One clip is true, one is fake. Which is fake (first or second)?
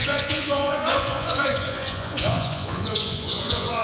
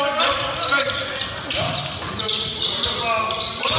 first